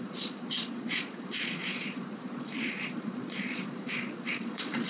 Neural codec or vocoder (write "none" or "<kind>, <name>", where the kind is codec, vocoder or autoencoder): vocoder, Vocos